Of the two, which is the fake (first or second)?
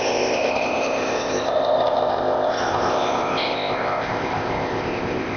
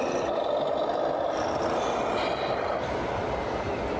first